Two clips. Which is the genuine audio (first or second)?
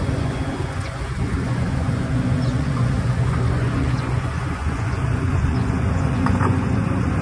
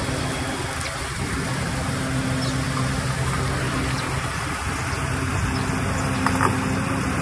second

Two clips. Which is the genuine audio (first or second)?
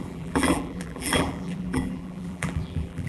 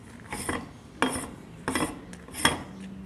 second